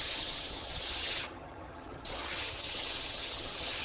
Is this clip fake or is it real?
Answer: fake